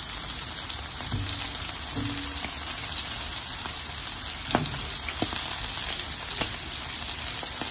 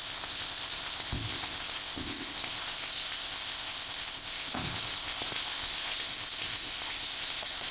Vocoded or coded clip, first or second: second